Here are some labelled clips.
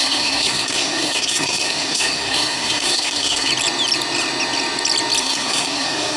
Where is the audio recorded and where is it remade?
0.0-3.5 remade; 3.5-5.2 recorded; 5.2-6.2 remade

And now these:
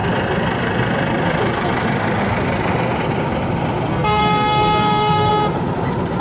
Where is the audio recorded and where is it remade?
0.0-3.9 recorded; 3.9-5.3 remade; 5.3-6.2 recorded

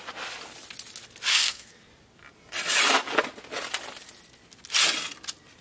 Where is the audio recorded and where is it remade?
0.0-1.3 recorded; 1.3-1.9 remade; 1.9-5.6 recorded

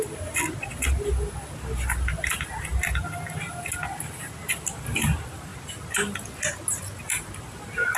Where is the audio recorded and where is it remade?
0.0-8.0 recorded

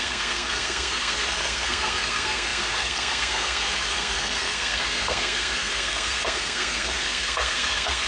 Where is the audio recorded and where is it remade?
0.0-8.1 remade

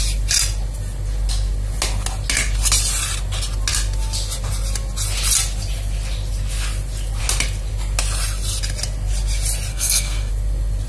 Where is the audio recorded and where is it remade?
0.0-9.7 recorded; 9.7-10.3 remade; 10.3-10.9 recorded